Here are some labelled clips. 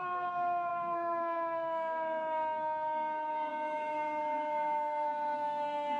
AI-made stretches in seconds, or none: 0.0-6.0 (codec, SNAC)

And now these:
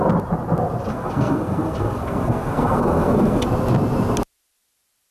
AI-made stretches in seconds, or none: 0.9-3.4 (codec, SNAC)

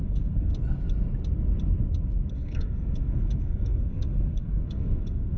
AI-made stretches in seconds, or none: 0.0-0.5 (codec, SNAC); 2.3-5.4

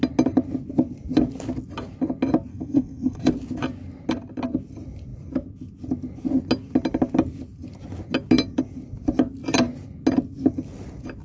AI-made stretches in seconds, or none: 2.5-3.3 (codec, SNAC)

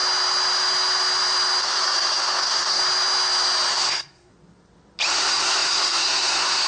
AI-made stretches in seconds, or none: 1.6-2.8 (codec, SNAC); 3.7-4.3; 5.1-6.7